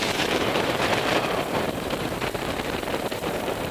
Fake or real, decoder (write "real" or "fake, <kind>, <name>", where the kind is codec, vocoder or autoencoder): fake, vocoder, BigVGAN v2